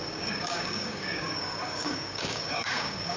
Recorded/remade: remade